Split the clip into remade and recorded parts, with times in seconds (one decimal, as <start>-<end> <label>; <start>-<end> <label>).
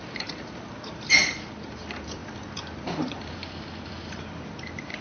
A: 0.0-1.2 remade; 1.2-1.7 recorded; 1.7-2.2 remade; 2.2-2.8 recorded; 2.8-3.4 remade; 3.4-3.9 recorded; 3.9-5.0 remade